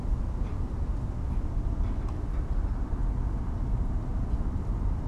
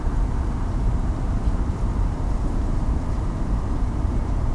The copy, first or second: second